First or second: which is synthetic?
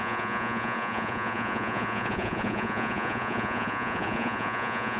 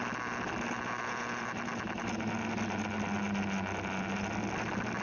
first